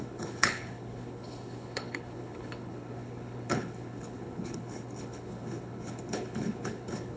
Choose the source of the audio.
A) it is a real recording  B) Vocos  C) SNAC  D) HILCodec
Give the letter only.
D